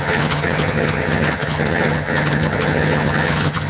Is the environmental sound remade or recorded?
remade